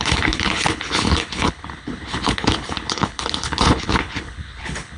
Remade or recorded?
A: remade